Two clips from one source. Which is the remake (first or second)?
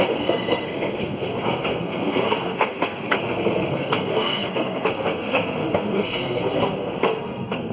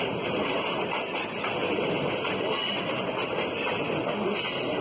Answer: first